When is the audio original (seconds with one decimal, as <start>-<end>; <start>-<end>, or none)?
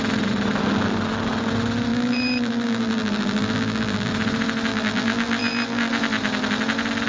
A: 0.0-1.9; 4.1-4.7; 5.9-7.1